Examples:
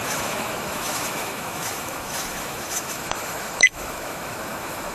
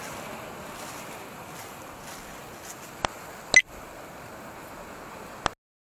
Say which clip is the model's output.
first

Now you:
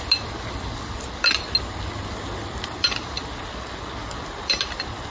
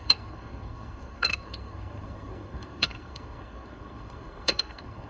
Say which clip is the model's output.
second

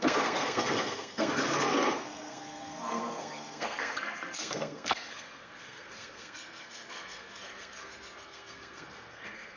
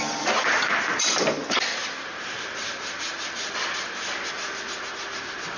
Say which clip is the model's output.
first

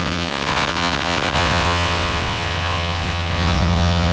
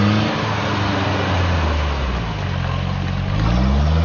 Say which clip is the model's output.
first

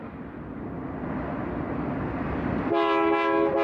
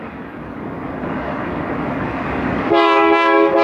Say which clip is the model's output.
second